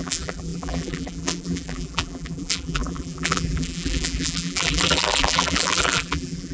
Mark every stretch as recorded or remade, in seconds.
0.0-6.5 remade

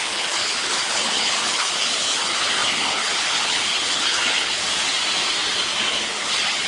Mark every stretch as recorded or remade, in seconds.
0.0-4.6 remade; 4.6-5.9 recorded; 5.9-6.7 remade

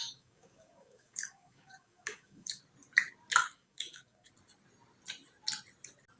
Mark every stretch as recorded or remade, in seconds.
0.0-2.6 remade; 2.6-3.4 recorded; 3.4-4.3 remade; 4.3-6.2 recorded

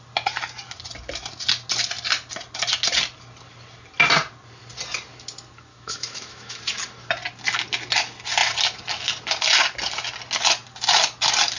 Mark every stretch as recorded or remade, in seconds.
0.0-5.7 recorded; 5.7-6.6 remade; 6.6-11.6 recorded